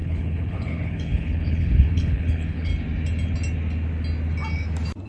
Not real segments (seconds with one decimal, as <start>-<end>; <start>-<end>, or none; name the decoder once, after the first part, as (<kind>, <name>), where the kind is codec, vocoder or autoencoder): 0.0-2.7 (codec, HILCodec)